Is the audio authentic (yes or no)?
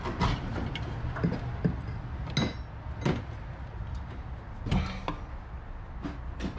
yes